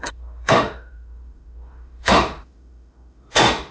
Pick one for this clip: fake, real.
fake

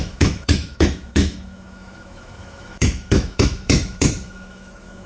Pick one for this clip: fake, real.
fake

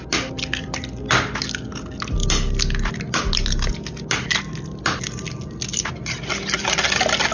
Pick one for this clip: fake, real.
real